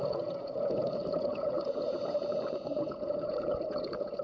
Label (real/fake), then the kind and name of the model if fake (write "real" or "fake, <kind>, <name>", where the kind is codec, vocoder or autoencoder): fake, vocoder, Vocos